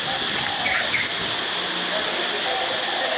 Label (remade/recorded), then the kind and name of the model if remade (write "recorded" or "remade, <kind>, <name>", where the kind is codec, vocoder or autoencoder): recorded